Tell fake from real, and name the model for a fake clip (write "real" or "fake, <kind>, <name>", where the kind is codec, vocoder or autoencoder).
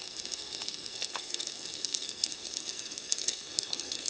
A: fake, codec, SNAC